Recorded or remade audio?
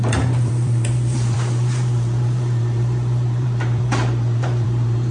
remade